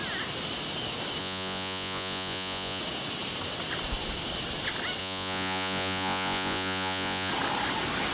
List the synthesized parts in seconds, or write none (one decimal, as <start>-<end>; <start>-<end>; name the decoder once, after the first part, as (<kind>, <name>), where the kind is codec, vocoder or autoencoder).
1.2-2.8 (vocoder, Vocos); 5.0-7.3